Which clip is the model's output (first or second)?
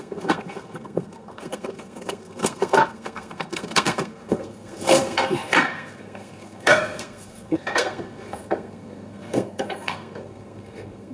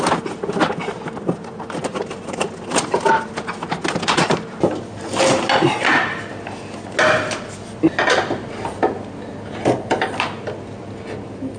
first